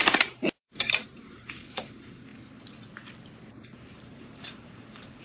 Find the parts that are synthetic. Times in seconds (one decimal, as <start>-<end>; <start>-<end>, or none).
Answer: 0.0-2.3; 3.5-5.2

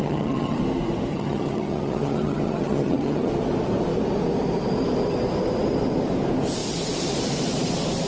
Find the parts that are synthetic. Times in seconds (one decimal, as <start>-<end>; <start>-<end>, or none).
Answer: 0.0-0.6; 1.1-3.3

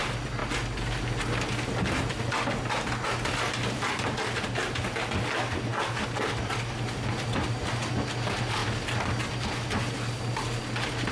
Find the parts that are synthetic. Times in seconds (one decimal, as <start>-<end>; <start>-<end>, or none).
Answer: none

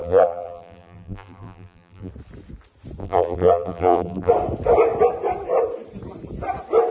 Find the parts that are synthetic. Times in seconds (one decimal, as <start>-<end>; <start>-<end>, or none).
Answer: 0.0-2.1; 3.0-4.3

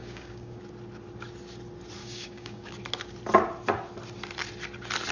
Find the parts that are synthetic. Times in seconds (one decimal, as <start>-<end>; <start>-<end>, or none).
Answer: 0.0-0.6; 2.0-2.7

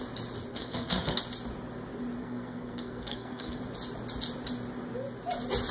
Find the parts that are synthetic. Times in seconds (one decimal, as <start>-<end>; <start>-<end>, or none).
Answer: 0.5-1.2; 2.2-3.6

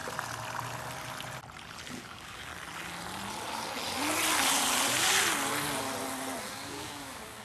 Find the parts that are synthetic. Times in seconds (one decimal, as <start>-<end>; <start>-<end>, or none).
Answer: 1.9-2.5; 6.4-7.4

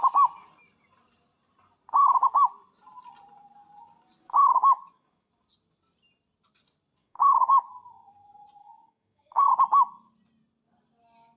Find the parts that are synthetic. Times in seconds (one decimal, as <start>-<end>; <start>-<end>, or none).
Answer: 4.2-5.3; 7.0-7.7; 8.6-9.5